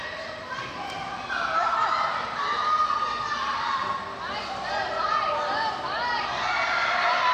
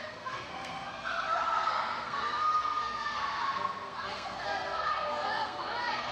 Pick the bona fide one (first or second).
first